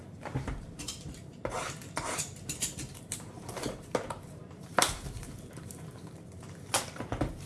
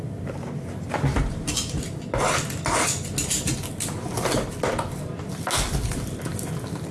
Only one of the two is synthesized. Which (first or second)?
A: first